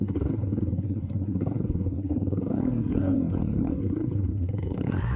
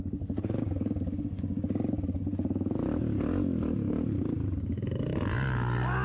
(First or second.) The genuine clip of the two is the second